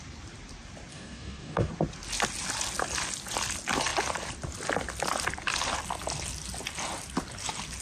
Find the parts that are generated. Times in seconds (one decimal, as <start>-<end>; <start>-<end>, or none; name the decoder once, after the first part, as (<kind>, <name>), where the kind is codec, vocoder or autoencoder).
0.9-1.7 (codec, DAC)